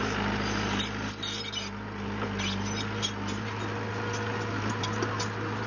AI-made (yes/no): no